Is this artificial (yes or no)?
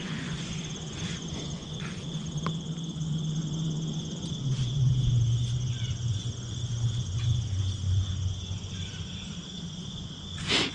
yes